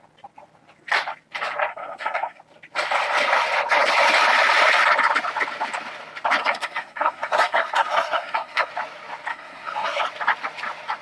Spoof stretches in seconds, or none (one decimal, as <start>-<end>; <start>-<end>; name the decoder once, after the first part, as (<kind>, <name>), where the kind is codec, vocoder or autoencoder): 1.7-2.4 (codec, SNAC); 6.4-8.7; 9.3-10.0